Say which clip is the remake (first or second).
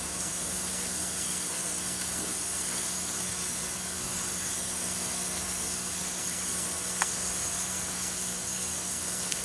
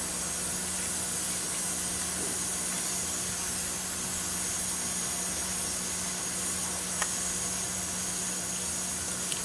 first